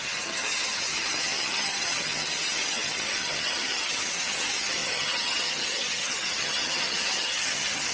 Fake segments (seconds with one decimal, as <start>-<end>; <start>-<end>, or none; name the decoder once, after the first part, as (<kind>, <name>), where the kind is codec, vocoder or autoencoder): 0.0-7.9 (vocoder, HiFi-GAN)